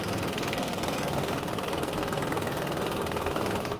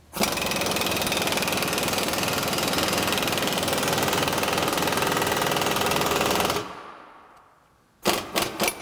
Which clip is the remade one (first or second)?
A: first